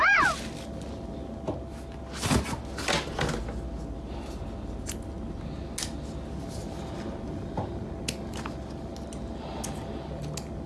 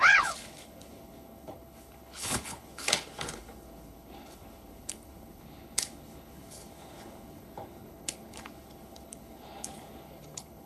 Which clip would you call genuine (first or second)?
first